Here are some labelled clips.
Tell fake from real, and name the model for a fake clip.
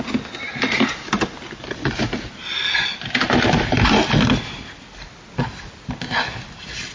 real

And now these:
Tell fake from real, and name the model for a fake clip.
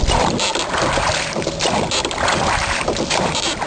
real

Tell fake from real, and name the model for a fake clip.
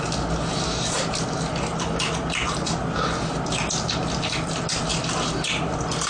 real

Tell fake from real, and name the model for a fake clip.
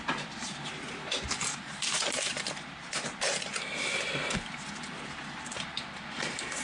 fake, vocoder, BigVGAN v2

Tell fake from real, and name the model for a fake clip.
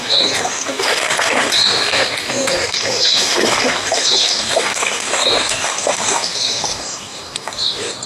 fake, codec, DAC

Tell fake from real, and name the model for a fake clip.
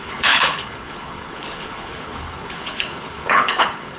fake, codec, HILCodec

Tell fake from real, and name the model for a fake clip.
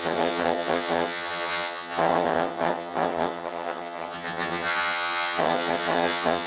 fake, vocoder, HiFi-GAN